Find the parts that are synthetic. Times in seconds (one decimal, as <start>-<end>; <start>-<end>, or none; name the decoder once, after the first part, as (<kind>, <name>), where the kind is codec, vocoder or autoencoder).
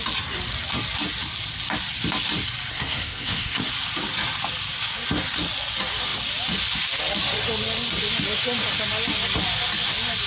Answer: 2.7-3.7 (codec, SNAC)